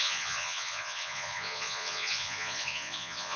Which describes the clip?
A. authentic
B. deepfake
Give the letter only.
B